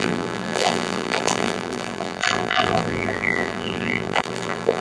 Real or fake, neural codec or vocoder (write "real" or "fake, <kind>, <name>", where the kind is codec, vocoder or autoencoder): fake, vocoder, BigVGAN v2